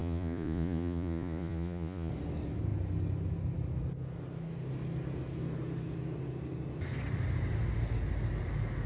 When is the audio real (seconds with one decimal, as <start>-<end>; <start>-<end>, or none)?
2.1-8.9